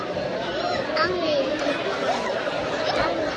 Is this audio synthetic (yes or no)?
no